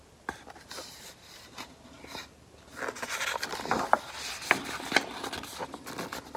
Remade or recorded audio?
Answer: recorded